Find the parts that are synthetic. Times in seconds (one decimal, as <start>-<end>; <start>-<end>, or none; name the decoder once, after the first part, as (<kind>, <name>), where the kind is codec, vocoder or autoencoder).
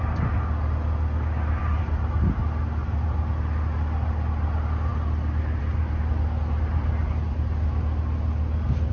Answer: none